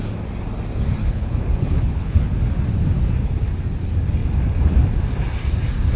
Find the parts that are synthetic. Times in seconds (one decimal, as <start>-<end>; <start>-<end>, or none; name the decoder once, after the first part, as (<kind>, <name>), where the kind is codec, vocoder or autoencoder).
1.0-2.4 (codec, HILCodec)